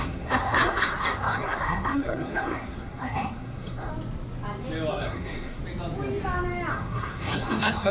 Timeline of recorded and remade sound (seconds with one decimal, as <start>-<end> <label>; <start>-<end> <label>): 0.0-3.9 remade; 3.9-4.9 recorded; 4.9-5.6 remade; 5.6-6.7 recorded; 6.7-7.9 remade